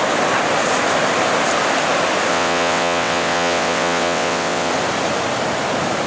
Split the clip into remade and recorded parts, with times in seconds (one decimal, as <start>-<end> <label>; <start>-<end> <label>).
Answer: 0.0-2.3 recorded; 2.3-4.7 remade; 4.7-6.1 recorded